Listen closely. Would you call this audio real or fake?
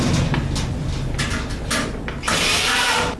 real